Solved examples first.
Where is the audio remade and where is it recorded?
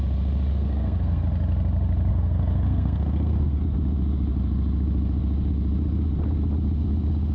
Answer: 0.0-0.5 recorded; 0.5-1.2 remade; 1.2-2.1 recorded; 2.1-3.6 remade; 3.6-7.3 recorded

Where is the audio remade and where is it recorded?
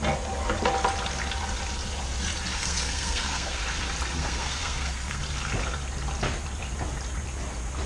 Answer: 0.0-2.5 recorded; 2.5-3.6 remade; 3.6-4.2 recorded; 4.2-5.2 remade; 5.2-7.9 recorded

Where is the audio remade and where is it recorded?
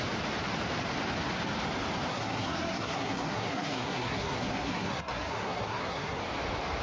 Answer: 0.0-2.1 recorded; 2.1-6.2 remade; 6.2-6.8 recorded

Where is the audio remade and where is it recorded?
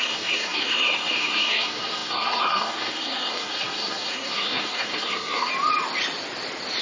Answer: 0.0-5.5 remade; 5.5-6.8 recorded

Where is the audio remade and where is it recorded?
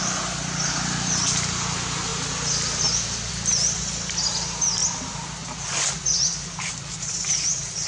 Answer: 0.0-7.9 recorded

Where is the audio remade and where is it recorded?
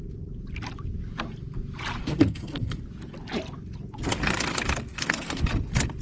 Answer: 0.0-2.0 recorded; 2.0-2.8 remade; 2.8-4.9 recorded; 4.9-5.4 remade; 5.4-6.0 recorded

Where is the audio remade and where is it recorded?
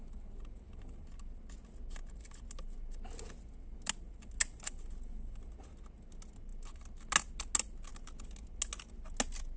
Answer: 0.0-9.6 recorded